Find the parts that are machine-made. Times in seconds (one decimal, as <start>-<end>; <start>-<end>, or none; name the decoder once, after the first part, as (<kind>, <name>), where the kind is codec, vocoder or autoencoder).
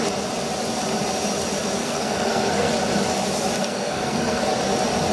1.8-2.7 (codec, SNAC); 3.6-4.4